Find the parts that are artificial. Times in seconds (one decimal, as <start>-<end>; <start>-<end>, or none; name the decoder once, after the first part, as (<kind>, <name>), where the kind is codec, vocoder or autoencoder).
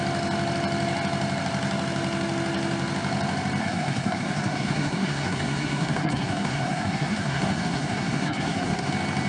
3.6-8.9 (codec, SNAC)